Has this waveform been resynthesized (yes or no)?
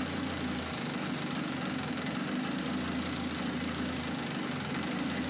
no